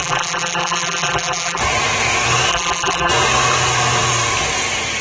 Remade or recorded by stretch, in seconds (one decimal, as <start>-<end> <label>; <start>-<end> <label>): 0.0-1.6 remade; 1.6-2.5 recorded; 2.5-3.1 remade; 3.1-5.0 recorded